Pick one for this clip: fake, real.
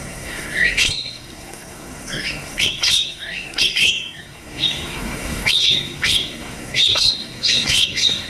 fake